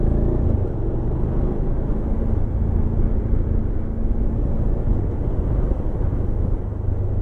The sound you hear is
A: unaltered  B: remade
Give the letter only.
A